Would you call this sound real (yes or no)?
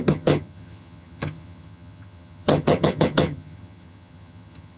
no